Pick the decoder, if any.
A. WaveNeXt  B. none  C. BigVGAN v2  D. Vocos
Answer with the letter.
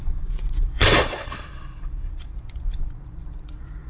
D